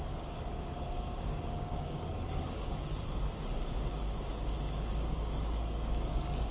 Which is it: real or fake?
fake